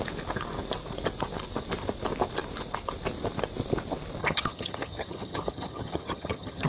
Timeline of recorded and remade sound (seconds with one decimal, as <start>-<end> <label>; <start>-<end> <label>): 0.0-4.2 recorded; 4.2-6.7 remade